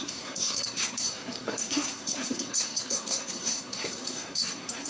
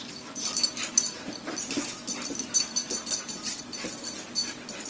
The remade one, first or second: first